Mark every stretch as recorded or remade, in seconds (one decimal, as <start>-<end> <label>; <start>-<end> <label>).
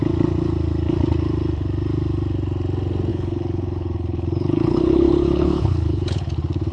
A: 0.0-3.1 recorded; 3.1-6.3 remade; 6.3-6.7 recorded